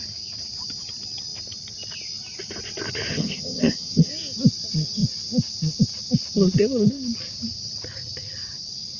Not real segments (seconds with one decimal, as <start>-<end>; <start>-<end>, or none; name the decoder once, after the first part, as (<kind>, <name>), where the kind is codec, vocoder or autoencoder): 3.1-4.1 (vocoder, HiFi-GAN)